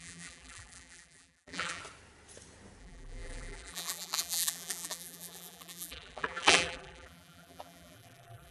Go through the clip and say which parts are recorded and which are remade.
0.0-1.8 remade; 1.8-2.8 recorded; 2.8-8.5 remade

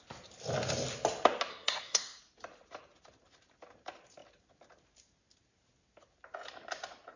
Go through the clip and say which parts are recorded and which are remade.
0.0-1.5 recorded; 1.5-2.2 remade; 2.2-7.2 recorded

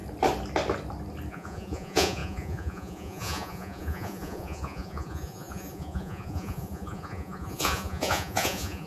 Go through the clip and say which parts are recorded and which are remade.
0.0-1.3 recorded; 1.3-8.9 remade